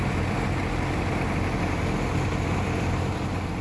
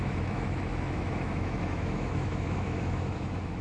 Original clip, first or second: first